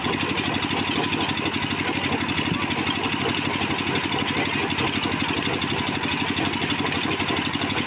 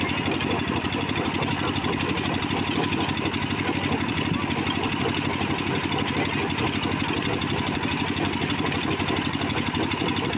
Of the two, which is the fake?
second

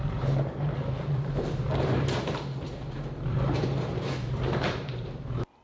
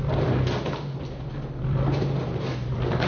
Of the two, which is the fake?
first